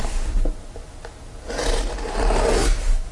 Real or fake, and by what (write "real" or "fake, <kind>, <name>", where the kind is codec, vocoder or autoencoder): real